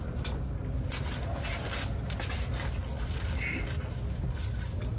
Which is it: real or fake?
real